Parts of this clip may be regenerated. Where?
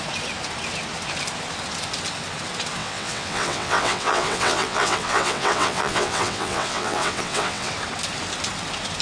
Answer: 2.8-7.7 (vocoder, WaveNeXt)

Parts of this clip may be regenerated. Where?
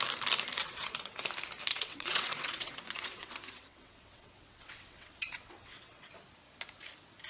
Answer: 0.6-1.2 (vocoder, WaveNeXt); 1.7-6.1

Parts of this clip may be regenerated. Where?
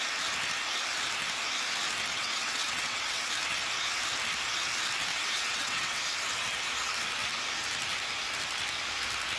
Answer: 2.1-3.3 (vocoder, WaveNeXt); 5.1-6.0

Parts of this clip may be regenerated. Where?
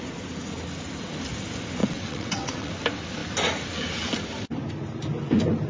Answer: 1.8-2.7 (vocoder, WaveNeXt)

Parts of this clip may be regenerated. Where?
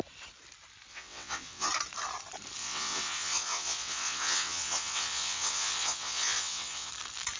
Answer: 0.9-1.7 (vocoder, WaveNeXt); 2.6-6.9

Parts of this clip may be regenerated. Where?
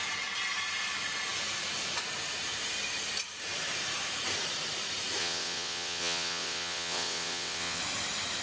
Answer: 5.2-7.8 (vocoder, WaveNeXt)